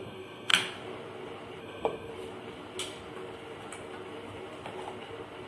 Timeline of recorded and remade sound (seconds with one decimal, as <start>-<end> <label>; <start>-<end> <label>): 0.0-0.5 remade; 0.5-1.6 recorded; 1.6-2.1 remade; 2.1-5.5 recorded